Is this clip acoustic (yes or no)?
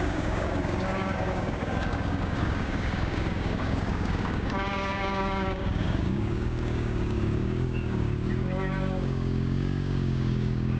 no